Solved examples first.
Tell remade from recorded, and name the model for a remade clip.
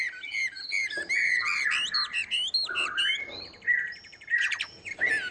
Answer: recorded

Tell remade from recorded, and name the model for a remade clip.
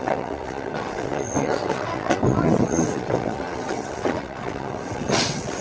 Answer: remade, vocoder, WaveNeXt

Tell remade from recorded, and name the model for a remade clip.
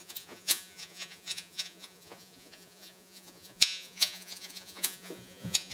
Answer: remade, vocoder, Vocos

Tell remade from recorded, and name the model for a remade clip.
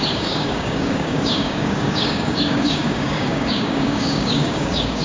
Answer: remade, codec, DAC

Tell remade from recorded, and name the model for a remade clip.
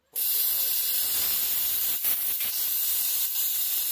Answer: recorded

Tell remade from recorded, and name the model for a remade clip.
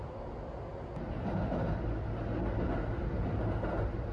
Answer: recorded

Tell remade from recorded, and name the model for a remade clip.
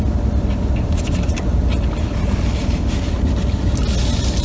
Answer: recorded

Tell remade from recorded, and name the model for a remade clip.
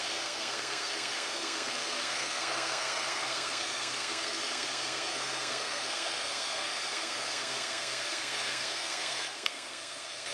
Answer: remade, codec, SNAC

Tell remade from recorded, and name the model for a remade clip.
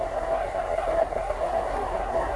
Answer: remade, codec, SNAC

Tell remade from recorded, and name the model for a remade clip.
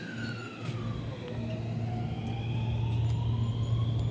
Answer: recorded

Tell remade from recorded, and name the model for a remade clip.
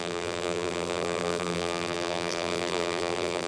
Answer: remade, vocoder, BigVGAN v2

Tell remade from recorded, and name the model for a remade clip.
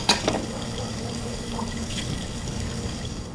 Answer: remade, codec, DAC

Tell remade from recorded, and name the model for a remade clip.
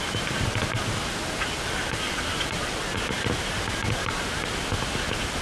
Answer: recorded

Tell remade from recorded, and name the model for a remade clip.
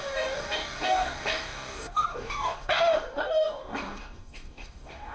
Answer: remade, codec, DAC